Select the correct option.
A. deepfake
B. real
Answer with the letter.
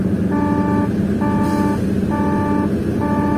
B